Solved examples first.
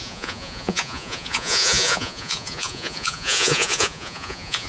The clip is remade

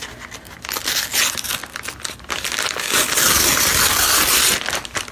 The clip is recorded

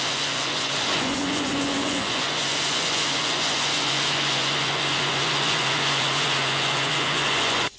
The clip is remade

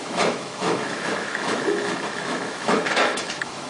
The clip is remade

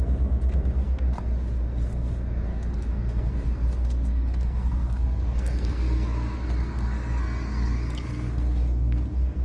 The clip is remade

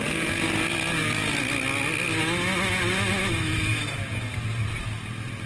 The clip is recorded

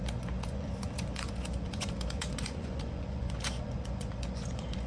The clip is remade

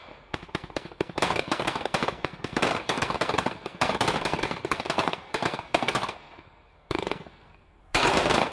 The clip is remade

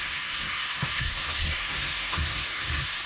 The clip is remade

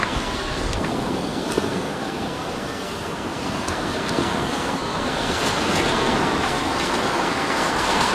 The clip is remade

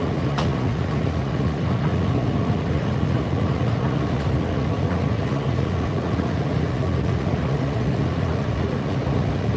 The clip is remade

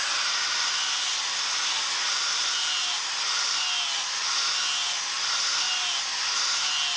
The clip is recorded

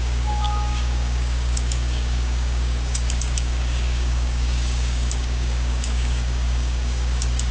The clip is remade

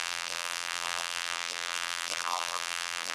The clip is remade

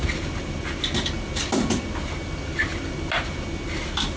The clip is recorded